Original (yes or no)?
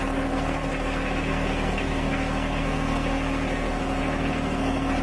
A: no